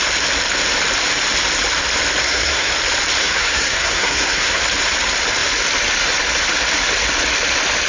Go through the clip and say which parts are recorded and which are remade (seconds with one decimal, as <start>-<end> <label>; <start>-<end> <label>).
0.0-2.2 recorded; 2.2-2.7 remade; 2.7-3.2 recorded; 3.2-4.6 remade; 4.6-7.9 recorded